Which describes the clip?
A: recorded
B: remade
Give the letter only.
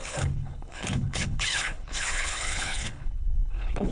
B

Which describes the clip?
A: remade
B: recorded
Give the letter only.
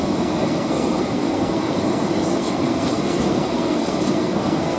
A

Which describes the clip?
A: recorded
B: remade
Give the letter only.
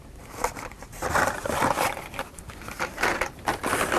B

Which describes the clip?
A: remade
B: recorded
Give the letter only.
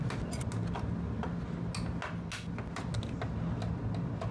B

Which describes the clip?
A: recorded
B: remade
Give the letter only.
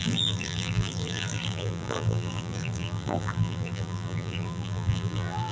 B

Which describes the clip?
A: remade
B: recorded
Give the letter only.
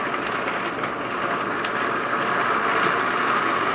B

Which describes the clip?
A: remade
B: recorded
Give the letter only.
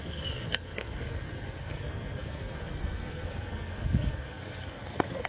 A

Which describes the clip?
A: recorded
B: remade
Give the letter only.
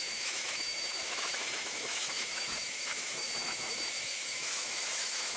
B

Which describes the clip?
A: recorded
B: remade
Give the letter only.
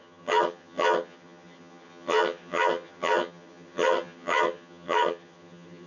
B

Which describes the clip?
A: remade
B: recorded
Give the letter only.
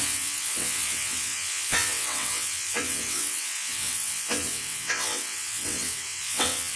A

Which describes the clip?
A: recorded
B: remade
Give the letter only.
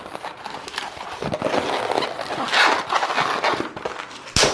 A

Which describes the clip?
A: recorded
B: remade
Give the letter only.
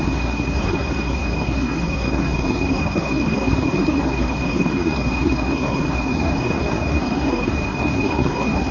B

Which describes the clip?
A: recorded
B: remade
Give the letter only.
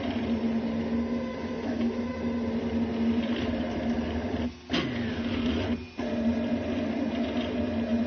A